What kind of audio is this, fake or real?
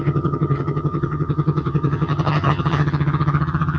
fake